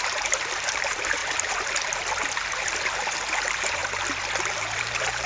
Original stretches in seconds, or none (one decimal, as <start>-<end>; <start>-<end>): 1.2-3.3; 3.8-4.5